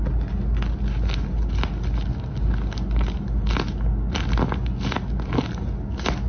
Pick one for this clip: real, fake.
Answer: real